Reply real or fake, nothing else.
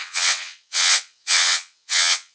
fake